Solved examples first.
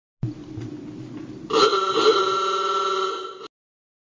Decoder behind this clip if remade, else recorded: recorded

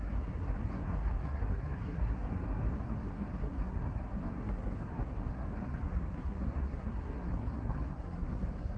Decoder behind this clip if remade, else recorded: remade, codec, SNAC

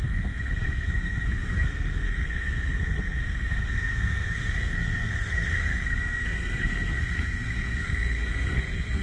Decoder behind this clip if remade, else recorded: remade, codec, SNAC